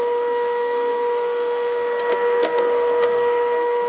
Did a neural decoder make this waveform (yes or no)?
yes